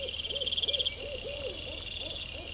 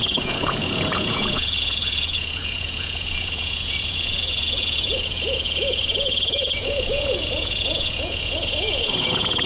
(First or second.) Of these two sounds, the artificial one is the second